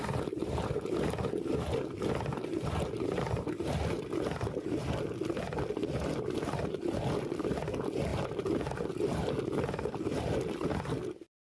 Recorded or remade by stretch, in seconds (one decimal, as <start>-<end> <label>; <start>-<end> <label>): 0.0-11.4 recorded